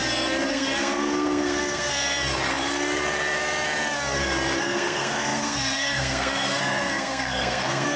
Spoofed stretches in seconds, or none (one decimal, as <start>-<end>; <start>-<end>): 0.5-1.9; 4.6-8.0